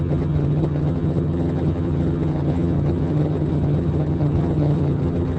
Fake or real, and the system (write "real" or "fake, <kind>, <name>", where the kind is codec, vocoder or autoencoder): fake, vocoder, HiFi-GAN